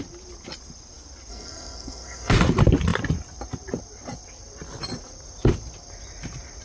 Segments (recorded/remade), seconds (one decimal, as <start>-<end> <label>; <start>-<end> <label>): 0.0-1.3 recorded; 1.3-2.3 remade; 2.3-6.6 recorded